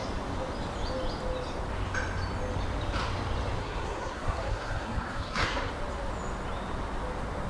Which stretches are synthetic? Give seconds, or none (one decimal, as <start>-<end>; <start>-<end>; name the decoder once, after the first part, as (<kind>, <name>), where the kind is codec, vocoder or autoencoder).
3.6-5.7 (codec, SNAC)